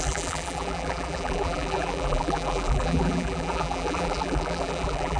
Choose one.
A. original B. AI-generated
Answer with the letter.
B